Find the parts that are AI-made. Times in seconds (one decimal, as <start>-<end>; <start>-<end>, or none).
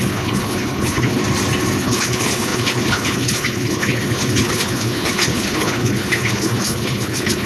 0.0-1.2; 1.8-7.5